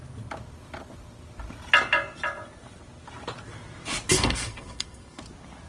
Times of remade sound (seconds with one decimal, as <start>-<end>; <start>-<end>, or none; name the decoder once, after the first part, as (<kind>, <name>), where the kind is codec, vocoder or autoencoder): 4.1-5.2 (codec, SNAC)

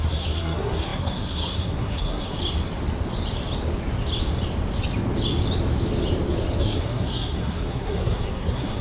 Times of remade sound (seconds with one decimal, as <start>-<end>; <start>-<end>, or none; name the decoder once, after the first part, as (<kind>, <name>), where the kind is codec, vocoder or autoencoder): 0.0-2.4 (codec, SNAC); 6.6-8.8

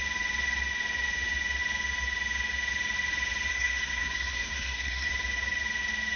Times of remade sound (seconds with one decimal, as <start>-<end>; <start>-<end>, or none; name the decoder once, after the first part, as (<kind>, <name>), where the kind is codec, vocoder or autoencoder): 3.5-5.1 (codec, SNAC)

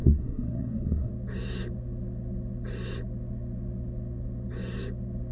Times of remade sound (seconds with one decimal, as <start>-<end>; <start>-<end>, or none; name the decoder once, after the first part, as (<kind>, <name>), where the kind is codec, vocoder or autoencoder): 0.0-1.1 (codec, SNAC)

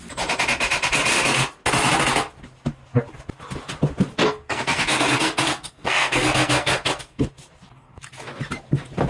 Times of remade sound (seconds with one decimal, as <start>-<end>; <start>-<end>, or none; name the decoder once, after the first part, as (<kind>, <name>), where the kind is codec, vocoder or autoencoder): 4.2-7.3 (codec, SNAC)

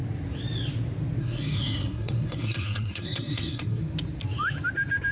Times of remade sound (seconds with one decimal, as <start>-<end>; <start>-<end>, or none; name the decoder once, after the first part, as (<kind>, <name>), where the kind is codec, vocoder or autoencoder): 1.2-3.8 (codec, SNAC)

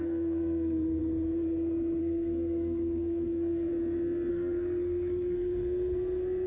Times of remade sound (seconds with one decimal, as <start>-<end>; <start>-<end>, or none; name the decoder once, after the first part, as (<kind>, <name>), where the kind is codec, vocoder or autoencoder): 0.0-1.0 (codec, SNAC); 2.0-3.7; 4.3-6.5